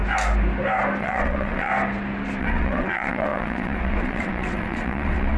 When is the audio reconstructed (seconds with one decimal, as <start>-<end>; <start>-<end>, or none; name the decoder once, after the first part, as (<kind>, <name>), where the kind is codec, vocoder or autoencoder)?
1.0-1.7 (vocoder, WaveNeXt); 2.4-5.4